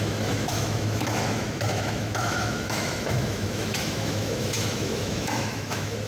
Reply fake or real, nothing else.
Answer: fake